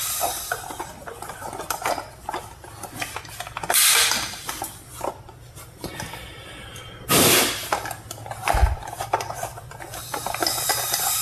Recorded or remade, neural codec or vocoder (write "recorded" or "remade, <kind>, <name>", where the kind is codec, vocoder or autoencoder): recorded